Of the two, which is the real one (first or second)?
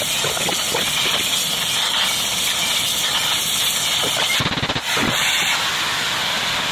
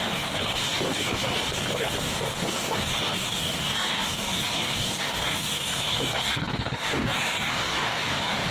first